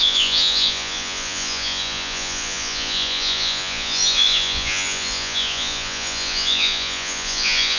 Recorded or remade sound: remade